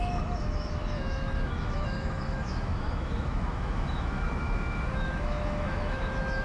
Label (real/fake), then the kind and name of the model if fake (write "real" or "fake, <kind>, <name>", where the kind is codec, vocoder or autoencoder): fake, autoencoder, DAC-VAE